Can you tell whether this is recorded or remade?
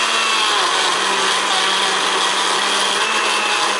recorded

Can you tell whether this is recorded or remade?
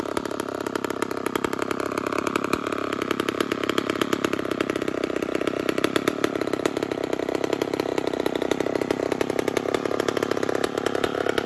recorded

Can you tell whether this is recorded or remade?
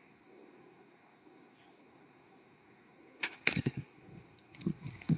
remade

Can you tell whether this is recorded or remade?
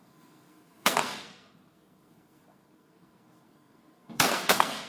remade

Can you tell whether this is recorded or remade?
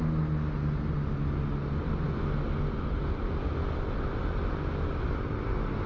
recorded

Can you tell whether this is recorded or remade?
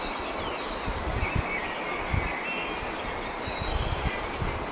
recorded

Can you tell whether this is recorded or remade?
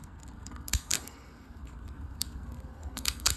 remade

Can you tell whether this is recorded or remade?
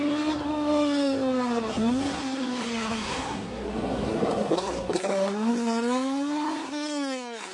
remade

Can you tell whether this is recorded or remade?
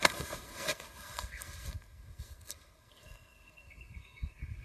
remade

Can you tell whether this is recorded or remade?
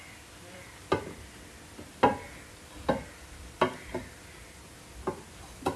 recorded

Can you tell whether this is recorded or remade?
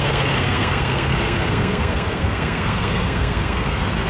remade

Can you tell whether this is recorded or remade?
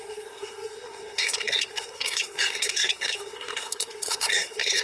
remade